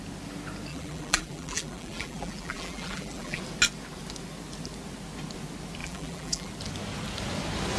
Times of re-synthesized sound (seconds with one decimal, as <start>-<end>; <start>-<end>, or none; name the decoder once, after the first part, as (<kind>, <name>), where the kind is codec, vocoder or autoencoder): 0.7-3.4 (vocoder, BigVGAN v2); 5.8-6.5